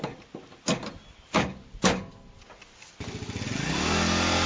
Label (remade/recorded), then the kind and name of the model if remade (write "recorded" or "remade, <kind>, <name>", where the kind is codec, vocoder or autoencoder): recorded